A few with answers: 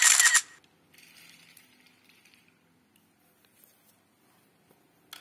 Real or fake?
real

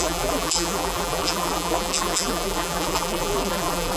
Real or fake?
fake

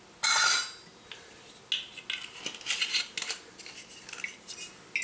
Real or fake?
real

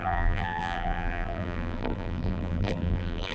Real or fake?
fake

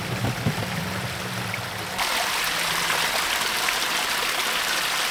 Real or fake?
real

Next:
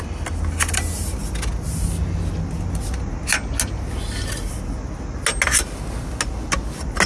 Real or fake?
real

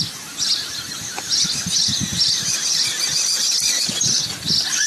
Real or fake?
real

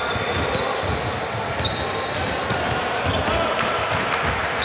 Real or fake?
real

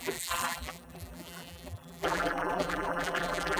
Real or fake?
fake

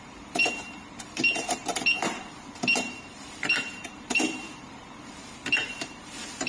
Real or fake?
fake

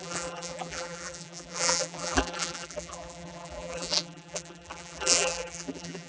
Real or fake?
fake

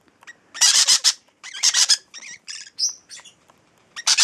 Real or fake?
fake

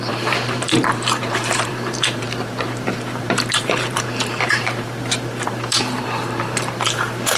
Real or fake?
fake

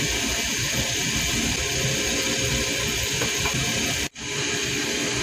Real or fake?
real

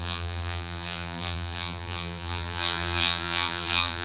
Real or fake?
fake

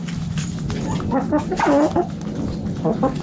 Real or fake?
real